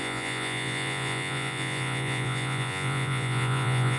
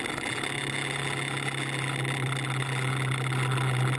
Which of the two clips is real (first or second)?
second